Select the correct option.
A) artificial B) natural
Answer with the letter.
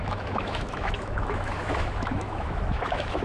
A